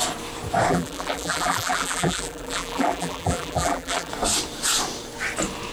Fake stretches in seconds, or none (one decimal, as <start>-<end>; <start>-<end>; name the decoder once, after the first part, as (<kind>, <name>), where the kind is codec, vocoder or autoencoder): 0.7-4.1 (vocoder, BigVGAN v2)

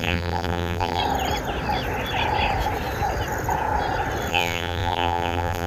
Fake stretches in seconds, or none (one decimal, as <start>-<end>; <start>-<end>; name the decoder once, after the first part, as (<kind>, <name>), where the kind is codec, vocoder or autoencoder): 0.0-1.0 (vocoder, BigVGAN v2); 4.3-5.7

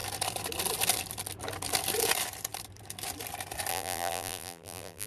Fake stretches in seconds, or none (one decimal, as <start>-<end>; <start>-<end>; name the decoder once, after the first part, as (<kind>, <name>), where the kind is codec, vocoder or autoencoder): 3.7-5.1 (vocoder, BigVGAN v2)

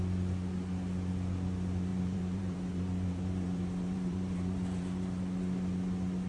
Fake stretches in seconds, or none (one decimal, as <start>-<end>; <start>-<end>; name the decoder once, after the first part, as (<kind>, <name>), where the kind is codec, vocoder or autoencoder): 1.9-5.2 (vocoder, BigVGAN v2)

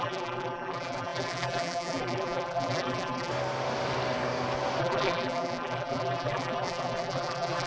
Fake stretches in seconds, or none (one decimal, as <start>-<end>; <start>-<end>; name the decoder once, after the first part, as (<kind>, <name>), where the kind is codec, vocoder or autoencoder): 0.0-3.3 (vocoder, BigVGAN v2); 4.8-7.7

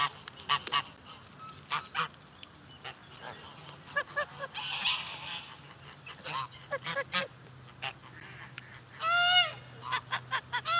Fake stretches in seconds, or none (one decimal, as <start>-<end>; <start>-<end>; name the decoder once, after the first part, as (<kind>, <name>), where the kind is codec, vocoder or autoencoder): 3.0-7.5 (vocoder, BigVGAN v2)

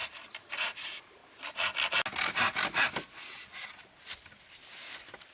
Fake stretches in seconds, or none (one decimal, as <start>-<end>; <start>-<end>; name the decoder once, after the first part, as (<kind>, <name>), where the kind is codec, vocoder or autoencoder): 0.6-1.2 (vocoder, BigVGAN v2); 4.4-5.3

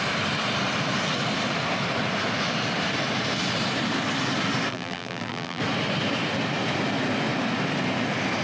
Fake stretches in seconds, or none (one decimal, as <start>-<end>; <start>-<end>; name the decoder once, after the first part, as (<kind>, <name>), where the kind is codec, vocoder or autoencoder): 4.7-5.6 (vocoder, BigVGAN v2)